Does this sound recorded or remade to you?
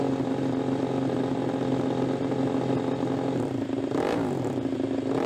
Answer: recorded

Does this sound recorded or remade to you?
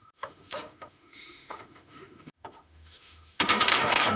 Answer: remade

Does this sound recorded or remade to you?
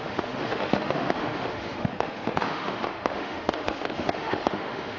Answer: remade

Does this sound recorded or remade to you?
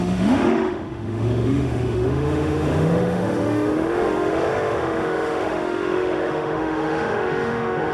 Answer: remade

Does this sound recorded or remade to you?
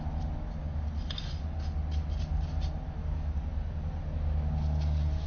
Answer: recorded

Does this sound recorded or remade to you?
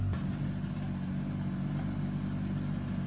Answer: recorded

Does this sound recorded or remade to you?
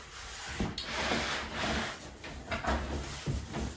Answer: recorded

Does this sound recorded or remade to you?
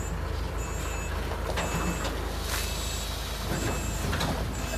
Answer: recorded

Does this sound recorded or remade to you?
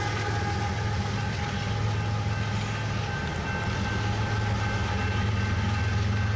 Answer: recorded